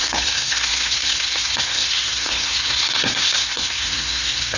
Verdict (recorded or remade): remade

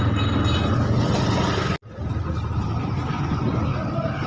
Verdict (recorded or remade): recorded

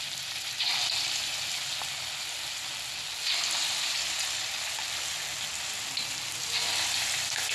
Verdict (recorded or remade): recorded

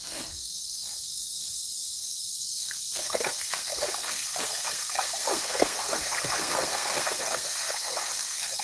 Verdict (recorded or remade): remade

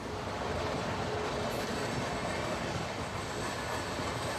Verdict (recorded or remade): recorded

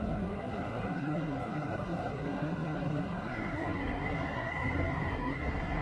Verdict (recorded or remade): remade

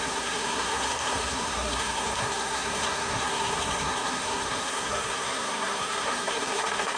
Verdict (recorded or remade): remade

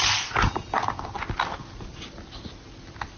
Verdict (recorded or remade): recorded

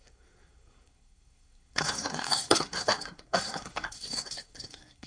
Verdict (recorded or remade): remade